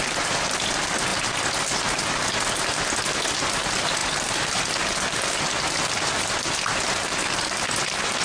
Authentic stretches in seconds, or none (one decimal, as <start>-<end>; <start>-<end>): 0.0-8.2